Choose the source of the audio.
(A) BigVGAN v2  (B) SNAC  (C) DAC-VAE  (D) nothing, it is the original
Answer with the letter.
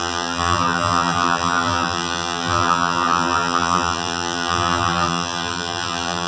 A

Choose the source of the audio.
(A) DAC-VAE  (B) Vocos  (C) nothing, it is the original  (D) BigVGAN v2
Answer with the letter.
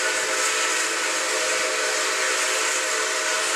C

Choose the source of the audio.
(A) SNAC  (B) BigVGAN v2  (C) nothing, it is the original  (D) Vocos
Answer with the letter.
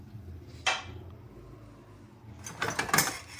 C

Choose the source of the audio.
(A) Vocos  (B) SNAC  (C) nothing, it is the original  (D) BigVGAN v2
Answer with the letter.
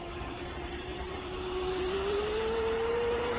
D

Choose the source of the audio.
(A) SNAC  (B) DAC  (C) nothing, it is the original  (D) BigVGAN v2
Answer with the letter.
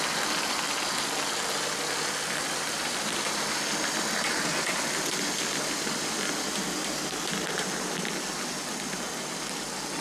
C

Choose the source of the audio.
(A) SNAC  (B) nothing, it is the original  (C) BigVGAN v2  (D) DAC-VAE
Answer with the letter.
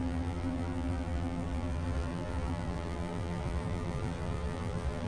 C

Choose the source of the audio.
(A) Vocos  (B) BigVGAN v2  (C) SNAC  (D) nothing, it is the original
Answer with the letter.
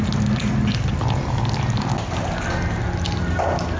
D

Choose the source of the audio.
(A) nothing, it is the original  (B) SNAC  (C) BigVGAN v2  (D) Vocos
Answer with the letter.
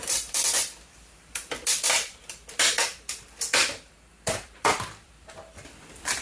C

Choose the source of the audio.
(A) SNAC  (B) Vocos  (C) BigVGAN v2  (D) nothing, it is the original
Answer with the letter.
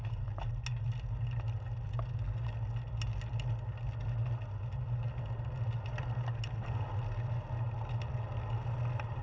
D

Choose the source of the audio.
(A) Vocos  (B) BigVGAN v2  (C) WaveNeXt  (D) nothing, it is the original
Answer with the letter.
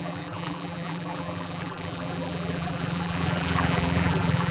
B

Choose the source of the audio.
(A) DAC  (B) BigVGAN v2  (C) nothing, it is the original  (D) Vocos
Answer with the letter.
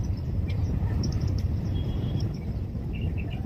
B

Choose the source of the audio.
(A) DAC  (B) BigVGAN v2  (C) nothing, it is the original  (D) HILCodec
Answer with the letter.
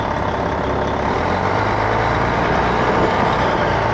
B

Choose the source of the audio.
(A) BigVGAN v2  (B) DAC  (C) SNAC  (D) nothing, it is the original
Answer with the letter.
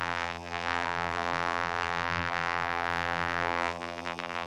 A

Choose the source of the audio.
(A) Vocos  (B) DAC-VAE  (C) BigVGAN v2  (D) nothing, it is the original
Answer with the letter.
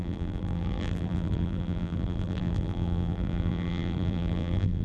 C